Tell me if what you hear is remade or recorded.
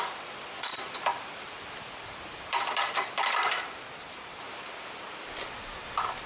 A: remade